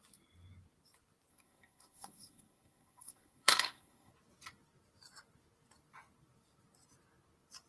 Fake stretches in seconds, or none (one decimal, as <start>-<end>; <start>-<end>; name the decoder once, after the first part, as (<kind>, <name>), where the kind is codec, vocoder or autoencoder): 1.3-4.1 (codec, SNAC)